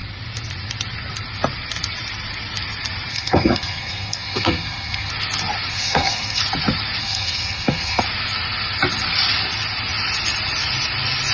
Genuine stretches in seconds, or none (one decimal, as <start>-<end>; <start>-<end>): 0.0-3.1; 5.1-5.7; 6.4-7.0; 8.0-11.3